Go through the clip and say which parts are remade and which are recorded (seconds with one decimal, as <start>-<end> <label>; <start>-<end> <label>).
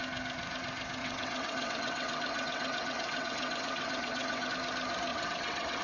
0.0-1.0 recorded; 1.0-4.5 remade; 4.5-5.1 recorded; 5.1-5.8 remade